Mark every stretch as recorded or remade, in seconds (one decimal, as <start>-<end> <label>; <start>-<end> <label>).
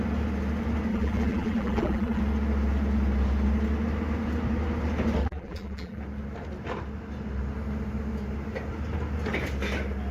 0.0-0.9 recorded; 0.9-2.2 remade; 2.2-5.2 recorded; 5.2-6.0 remade; 6.0-10.1 recorded